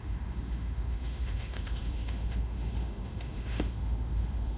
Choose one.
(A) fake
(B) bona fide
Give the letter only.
A